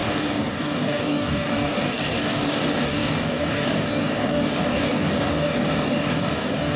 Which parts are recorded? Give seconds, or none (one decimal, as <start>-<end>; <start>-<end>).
none